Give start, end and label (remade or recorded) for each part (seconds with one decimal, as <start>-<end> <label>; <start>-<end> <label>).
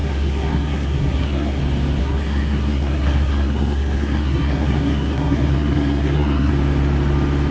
0.0-1.6 remade; 1.6-2.0 recorded; 2.0-6.5 remade; 6.5-7.5 recorded